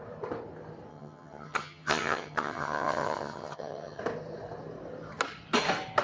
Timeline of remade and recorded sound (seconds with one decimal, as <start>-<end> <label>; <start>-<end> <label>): 0.0-0.9 recorded; 0.9-4.0 remade; 4.0-6.0 recorded